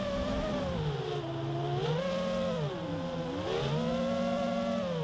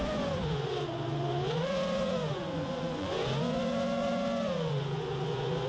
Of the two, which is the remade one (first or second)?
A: second